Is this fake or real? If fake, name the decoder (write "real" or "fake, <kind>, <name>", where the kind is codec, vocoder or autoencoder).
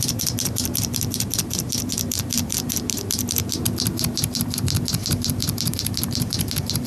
fake, vocoder, BigVGAN v2